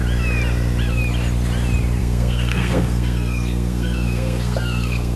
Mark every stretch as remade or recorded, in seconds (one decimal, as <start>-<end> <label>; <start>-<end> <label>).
0.0-2.0 recorded; 2.0-5.2 remade